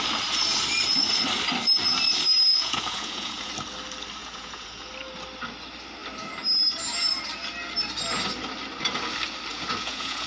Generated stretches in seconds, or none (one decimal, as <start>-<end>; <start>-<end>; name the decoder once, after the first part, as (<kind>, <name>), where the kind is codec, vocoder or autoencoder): 2.5-3.5 (vocoder, Vocos); 4.2-4.9; 9.5-10.3